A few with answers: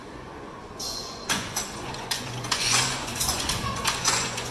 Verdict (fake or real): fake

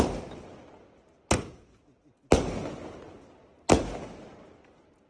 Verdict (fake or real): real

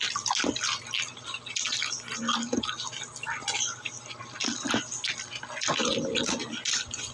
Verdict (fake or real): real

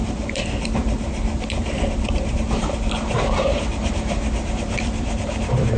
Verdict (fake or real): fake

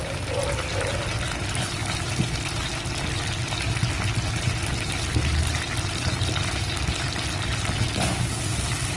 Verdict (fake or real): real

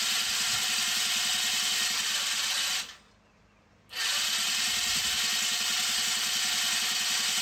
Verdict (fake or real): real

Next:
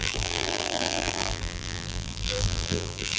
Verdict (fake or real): fake